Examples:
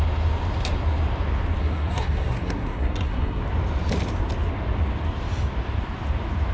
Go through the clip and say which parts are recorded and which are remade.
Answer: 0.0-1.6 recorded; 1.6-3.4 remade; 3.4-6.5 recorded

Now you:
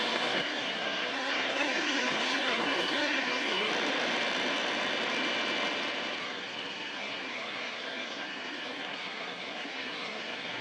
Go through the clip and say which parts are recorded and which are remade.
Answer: 0.0-3.7 remade; 3.7-6.2 recorded; 6.2-10.6 remade

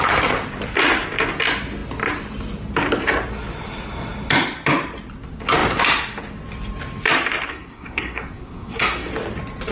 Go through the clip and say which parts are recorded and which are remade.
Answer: 0.0-7.5 recorded; 7.5-9.1 remade; 9.1-9.7 recorded

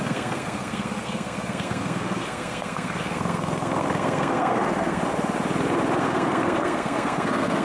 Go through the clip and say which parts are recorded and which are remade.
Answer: 0.0-5.0 remade; 5.0-6.0 recorded; 6.0-7.6 remade

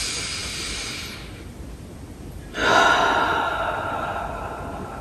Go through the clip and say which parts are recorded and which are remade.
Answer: 0.0-5.0 recorded

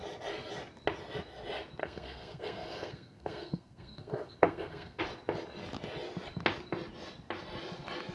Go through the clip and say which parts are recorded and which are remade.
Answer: 0.0-1.8 recorded; 1.8-5.0 remade; 5.0-8.1 recorded

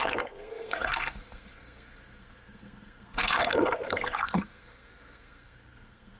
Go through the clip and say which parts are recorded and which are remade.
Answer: 0.0-6.2 remade

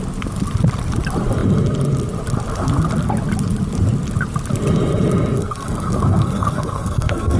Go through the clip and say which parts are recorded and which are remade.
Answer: 0.0-5.4 recorded; 5.4-7.4 remade